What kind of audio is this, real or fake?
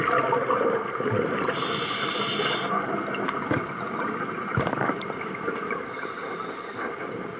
real